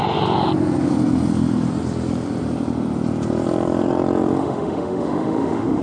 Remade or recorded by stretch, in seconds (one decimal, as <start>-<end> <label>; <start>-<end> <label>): 0.0-4.4 recorded; 4.4-5.8 remade